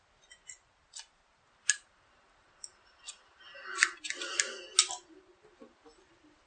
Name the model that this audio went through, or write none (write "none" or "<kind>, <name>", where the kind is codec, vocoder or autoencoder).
none